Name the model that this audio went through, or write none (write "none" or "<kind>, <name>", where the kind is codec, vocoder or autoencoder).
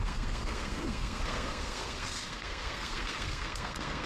codec, SNAC